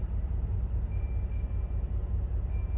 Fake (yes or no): no